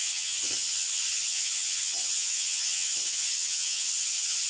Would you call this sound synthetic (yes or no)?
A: yes